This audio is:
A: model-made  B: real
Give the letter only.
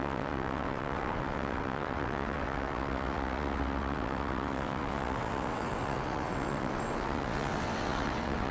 A